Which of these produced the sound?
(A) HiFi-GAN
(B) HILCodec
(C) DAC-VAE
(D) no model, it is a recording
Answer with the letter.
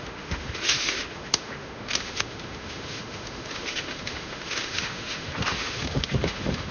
C